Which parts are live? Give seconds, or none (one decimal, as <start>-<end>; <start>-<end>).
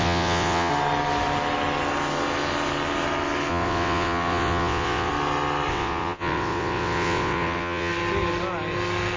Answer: 0.7-3.5; 5.1-5.7; 7.9-9.2